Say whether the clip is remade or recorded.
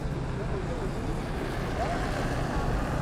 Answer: recorded